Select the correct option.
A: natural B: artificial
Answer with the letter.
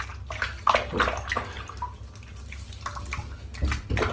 A